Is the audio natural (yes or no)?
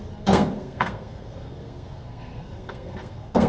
no